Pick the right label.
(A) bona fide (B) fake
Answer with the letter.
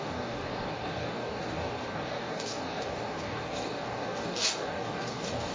B